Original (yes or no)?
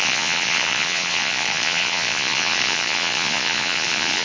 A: no